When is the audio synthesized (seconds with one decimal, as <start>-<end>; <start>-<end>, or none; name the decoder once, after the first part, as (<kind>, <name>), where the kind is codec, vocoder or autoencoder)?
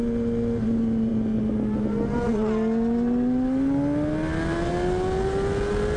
none